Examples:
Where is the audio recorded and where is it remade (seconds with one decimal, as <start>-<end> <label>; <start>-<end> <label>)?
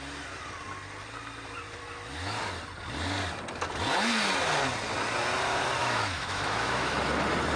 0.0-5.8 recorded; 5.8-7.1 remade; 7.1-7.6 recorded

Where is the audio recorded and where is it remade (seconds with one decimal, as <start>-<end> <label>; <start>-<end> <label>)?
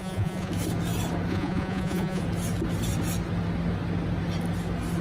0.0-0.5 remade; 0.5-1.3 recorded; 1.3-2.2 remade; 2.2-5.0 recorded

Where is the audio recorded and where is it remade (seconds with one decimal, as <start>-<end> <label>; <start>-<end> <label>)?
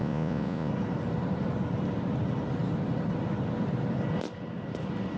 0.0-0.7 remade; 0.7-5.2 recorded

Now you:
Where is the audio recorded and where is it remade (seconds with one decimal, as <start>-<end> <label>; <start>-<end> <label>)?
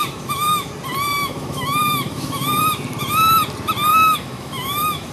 0.0-0.7 remade; 0.7-1.2 recorded; 1.2-2.6 remade; 2.6-3.9 recorded; 3.9-5.1 remade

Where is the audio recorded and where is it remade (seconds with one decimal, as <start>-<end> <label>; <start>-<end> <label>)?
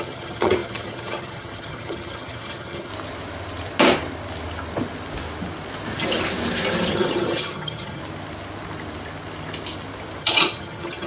0.0-2.9 remade; 2.9-6.9 recorded; 6.9-8.0 remade; 8.0-10.2 recorded; 10.2-11.1 remade